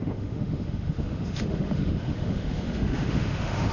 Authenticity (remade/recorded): remade